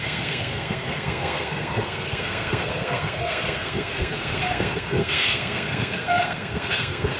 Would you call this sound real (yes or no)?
no